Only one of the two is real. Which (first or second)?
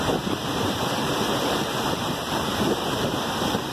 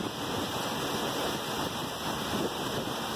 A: second